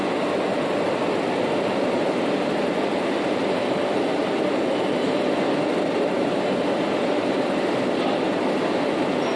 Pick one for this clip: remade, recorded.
recorded